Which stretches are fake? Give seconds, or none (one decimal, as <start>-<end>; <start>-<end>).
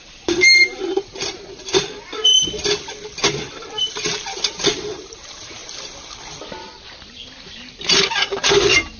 0.0-2.3; 3.8-5.6; 8.1-9.0